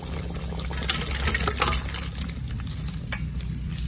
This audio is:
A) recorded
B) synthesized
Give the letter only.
A